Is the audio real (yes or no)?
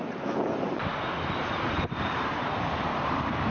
yes